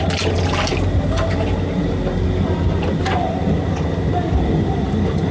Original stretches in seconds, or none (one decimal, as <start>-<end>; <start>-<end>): 0.0-5.3